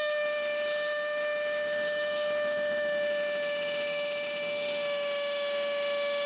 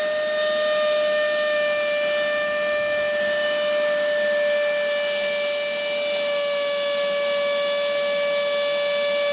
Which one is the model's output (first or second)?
first